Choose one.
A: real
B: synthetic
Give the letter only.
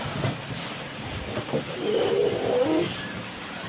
A